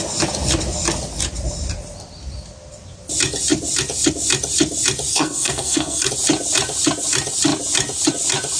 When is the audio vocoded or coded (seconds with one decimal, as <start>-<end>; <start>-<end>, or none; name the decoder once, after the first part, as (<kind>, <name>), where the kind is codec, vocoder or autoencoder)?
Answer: 5.1-6.1 (codec, SNAC)